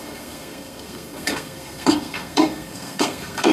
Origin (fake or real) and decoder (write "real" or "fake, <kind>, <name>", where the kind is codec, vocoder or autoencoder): fake, codec, SNAC